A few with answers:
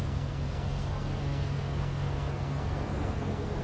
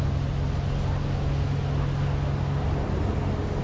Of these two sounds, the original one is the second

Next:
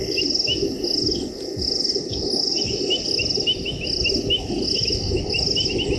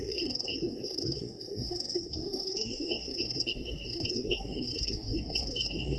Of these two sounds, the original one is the first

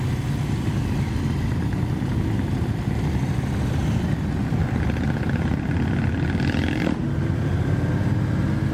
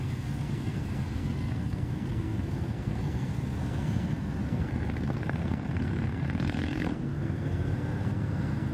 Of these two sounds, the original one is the first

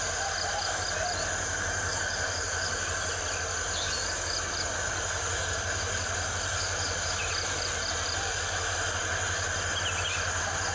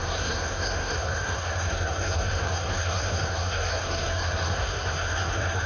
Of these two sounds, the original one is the first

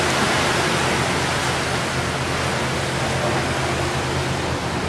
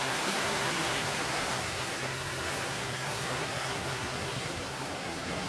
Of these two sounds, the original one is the first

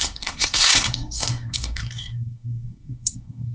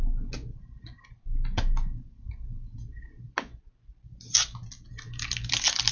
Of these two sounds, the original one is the second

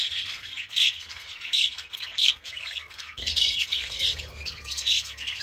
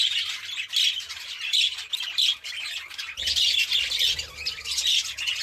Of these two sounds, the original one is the second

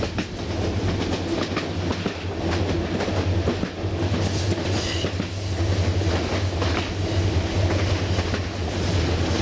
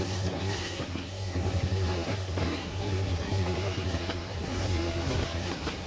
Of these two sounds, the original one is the first